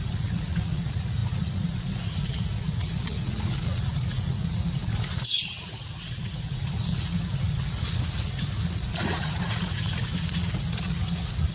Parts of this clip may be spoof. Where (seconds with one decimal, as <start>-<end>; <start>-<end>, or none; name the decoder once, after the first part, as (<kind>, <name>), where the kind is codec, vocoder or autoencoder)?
0.0-11.5 (vocoder, Vocos)